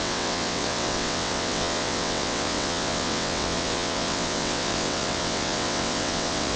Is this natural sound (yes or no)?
no